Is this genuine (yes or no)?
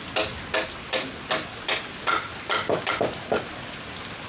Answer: yes